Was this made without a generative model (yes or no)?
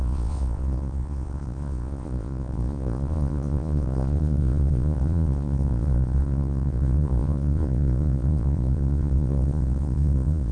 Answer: no